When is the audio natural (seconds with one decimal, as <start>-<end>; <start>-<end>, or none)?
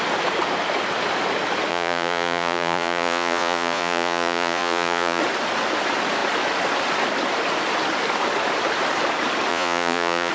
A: 0.0-1.7; 5.2-9.5